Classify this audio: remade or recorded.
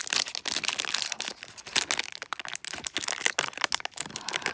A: recorded